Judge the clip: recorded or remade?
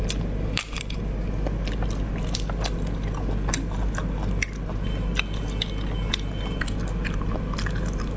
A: recorded